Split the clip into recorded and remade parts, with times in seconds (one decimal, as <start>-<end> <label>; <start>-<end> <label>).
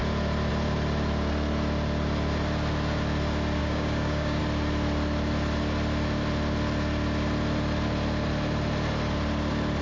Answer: 0.0-3.6 recorded; 3.6-4.4 remade; 4.4-9.8 recorded